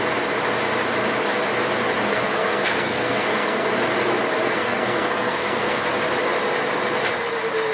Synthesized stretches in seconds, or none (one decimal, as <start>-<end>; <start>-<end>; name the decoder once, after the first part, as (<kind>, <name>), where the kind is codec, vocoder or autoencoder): 2.1-3.7 (codec, SNAC); 4.4-5.8